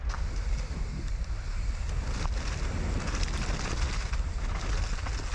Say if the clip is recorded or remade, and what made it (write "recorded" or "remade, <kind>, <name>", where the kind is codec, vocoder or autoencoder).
recorded